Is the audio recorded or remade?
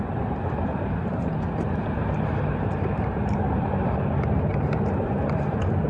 remade